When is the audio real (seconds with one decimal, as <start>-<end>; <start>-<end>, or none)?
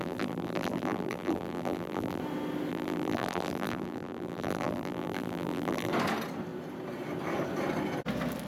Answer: 2.2-2.7; 5.9-8.5